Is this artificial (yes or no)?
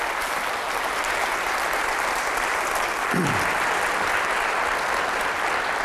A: no